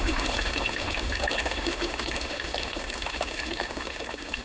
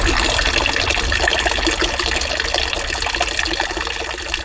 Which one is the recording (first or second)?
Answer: second